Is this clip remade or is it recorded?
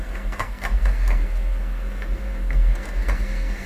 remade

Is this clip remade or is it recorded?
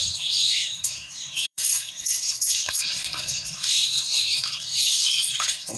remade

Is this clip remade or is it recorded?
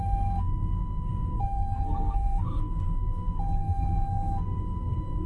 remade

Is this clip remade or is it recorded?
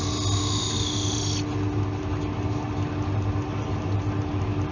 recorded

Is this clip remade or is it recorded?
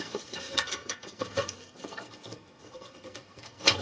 remade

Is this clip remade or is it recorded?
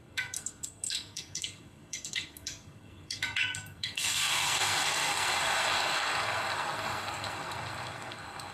remade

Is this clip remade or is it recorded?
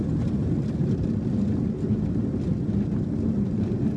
recorded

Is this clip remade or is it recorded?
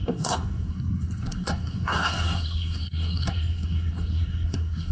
remade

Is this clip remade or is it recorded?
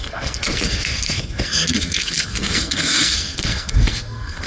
remade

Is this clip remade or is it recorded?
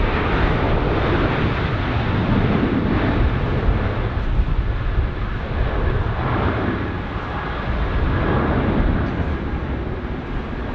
recorded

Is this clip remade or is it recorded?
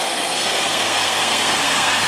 remade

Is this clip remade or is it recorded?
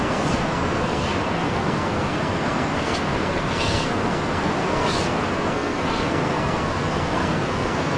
remade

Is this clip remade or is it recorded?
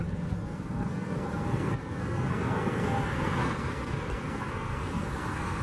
remade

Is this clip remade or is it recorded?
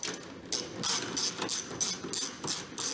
recorded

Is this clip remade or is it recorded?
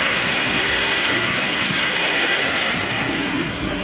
remade